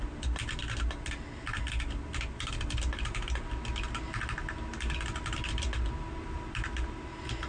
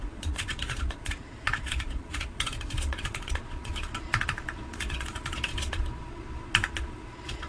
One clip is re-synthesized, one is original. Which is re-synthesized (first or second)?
second